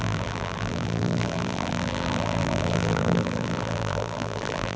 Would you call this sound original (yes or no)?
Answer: no